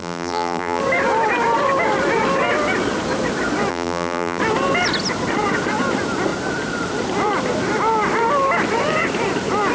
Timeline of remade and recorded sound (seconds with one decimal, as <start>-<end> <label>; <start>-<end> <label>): 0.0-0.8 remade; 0.8-3.7 recorded; 3.7-4.4 remade; 4.4-9.7 recorded